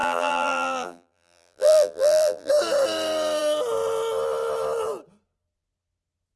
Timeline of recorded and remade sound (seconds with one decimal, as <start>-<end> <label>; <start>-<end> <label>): 0.0-2.5 remade; 2.5-6.4 recorded